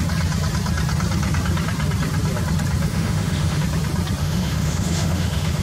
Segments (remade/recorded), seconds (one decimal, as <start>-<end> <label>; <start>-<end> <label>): 0.0-2.9 recorded; 2.9-3.6 remade; 3.6-4.2 recorded; 4.2-5.6 remade